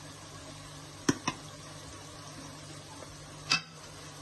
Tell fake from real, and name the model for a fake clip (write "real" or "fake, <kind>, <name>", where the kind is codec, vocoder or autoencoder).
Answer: real